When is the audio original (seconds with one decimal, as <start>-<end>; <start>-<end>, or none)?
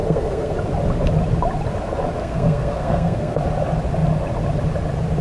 0.5-2.2; 3.4-5.2